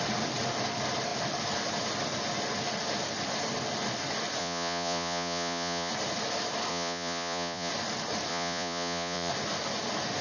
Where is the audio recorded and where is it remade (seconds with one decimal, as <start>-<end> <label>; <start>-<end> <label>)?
0.0-4.4 recorded; 4.4-5.9 remade; 5.9-6.7 recorded; 6.7-7.7 remade; 7.7-8.3 recorded; 8.3-9.3 remade; 9.3-10.2 recorded